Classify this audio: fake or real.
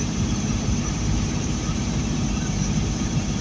fake